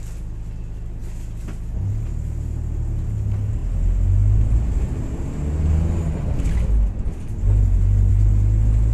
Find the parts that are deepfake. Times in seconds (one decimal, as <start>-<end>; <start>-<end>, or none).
none